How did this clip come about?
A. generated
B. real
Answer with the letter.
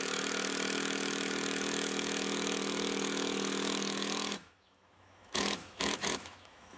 A